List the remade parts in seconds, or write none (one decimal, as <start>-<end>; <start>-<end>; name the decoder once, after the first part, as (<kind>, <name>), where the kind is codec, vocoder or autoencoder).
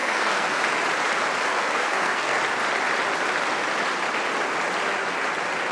0.0-0.6 (codec, SNAC); 1.5-2.4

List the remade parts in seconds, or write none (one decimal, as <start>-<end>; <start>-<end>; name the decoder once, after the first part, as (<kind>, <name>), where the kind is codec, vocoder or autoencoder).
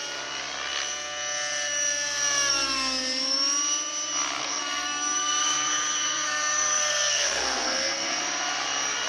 4.4-8.2 (codec, SNAC)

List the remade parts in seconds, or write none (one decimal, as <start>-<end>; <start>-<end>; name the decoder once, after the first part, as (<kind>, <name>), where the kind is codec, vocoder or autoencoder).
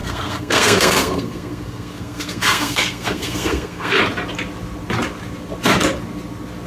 0.0-4.0 (codec, SNAC)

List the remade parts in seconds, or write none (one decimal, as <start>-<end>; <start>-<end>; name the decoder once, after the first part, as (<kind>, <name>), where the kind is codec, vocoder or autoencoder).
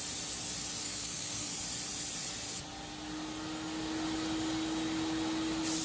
0.8-1.5 (codec, SNAC)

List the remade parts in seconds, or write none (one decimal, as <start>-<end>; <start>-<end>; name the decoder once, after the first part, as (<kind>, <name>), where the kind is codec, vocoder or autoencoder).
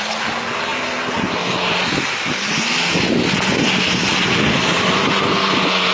none